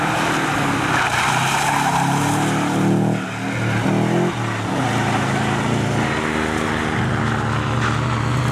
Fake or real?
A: real